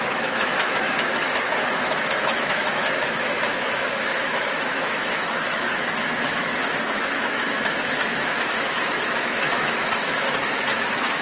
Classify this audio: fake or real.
fake